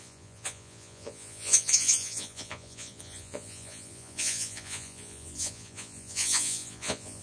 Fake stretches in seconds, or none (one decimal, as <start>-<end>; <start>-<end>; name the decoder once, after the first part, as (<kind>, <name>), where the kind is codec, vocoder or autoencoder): 0.0-7.2 (vocoder, Vocos)